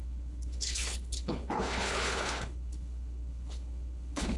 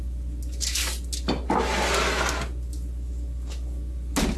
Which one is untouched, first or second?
second